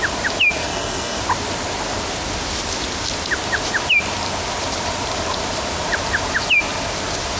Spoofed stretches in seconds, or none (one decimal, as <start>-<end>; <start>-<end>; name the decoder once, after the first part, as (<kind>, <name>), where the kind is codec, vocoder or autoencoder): 0.6-1.2 (codec, SNAC)